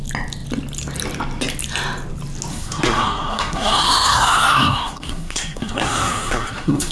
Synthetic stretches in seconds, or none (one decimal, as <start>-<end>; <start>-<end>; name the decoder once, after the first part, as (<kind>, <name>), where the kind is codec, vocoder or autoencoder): 2.5-6.9 (codec, SNAC)